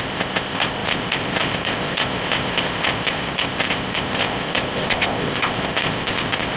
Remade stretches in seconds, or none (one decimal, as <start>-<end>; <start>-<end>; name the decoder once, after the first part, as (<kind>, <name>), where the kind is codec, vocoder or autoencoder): 0.0-6.6 (codec, ZipCodec)